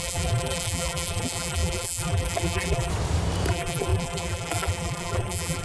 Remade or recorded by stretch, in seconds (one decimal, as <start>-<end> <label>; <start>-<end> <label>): 0.0-2.9 remade; 2.9-3.5 recorded; 3.5-5.6 remade